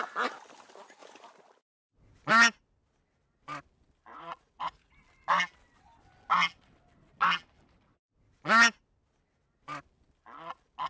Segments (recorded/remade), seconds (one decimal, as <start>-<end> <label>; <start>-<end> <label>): 0.0-4.1 recorded; 4.1-4.9 remade; 4.9-10.9 recorded